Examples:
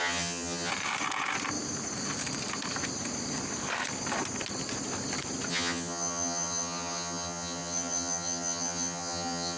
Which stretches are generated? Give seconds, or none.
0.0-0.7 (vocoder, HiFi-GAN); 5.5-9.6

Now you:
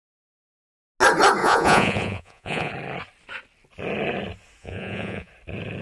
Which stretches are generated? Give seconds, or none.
1.4-2.7 (vocoder, Vocos); 4.6-5.3